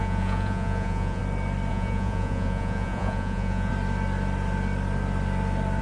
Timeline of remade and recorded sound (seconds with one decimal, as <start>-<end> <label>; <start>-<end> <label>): 0.0-1.2 remade; 1.2-1.7 recorded; 1.7-3.7 remade; 3.7-5.8 recorded